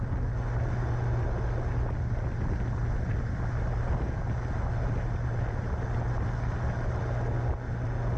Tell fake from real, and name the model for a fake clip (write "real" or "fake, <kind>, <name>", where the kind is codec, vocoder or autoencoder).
real